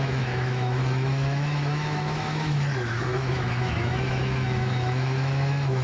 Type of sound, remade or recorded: remade